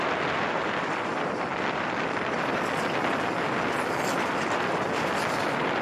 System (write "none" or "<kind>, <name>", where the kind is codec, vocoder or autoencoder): vocoder, BigVGAN v2